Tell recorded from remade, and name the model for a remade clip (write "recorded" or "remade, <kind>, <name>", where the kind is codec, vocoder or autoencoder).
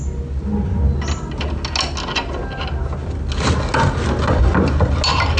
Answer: recorded